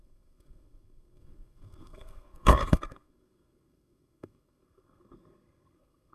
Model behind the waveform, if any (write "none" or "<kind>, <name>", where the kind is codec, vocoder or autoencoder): codec, SNAC